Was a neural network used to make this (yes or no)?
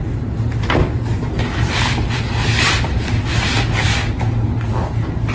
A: no